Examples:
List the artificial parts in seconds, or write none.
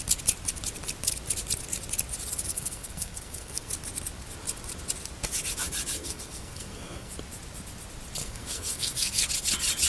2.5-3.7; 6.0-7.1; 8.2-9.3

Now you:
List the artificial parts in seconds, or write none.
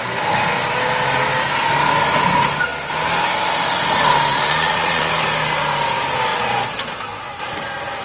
4.3-5.1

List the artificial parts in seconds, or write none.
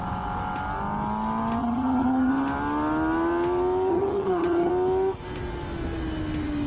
1.6-2.3; 3.9-4.7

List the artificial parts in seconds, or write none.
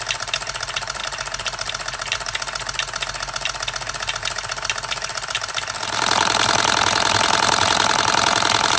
none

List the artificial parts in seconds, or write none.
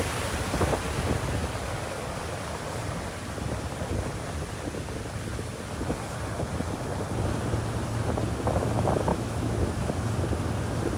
9.1-9.9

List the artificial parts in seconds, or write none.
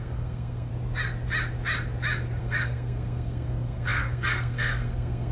0.0-0.7; 2.4-5.3